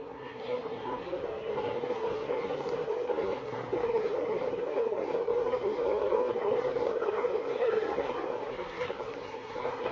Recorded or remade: remade